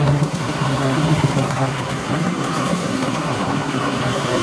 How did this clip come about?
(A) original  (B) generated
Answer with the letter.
B